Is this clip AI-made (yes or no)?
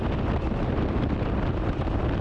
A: no